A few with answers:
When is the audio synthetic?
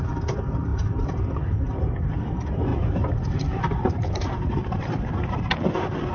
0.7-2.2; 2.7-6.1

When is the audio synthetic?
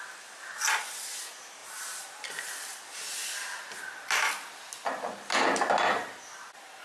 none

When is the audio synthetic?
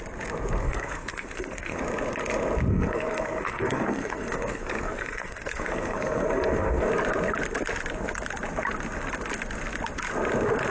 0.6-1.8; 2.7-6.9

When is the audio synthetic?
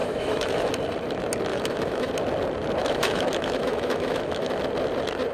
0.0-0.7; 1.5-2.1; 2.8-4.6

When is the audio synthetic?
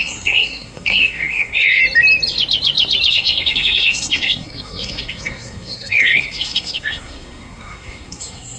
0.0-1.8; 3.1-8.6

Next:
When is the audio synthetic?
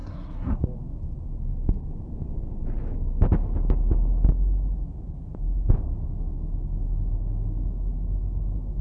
0.0-0.6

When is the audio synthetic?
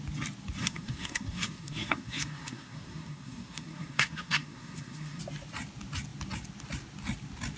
0.6-5.2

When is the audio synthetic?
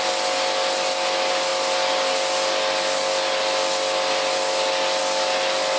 none